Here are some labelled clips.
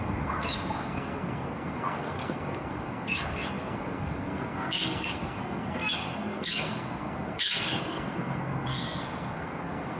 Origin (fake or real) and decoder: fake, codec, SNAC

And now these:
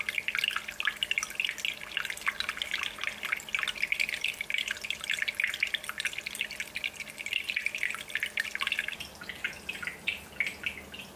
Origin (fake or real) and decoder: real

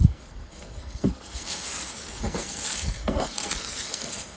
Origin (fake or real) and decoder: fake, codec, SNAC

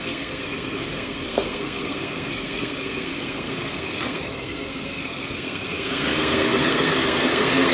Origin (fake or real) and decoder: fake, codec, SNAC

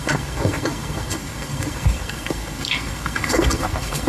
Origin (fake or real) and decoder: fake, codec, SNAC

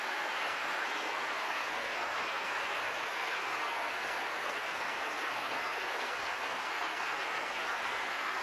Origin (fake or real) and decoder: fake, codec, SNAC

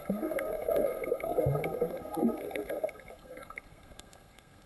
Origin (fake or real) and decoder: fake, codec, SNAC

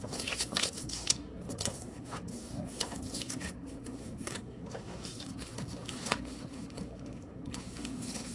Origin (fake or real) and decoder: fake, codec, SNAC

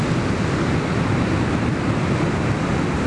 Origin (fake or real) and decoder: real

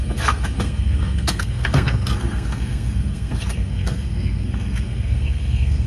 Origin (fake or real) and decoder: fake, codec, SNAC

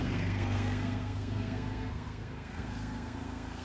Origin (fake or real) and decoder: fake, codec, SNAC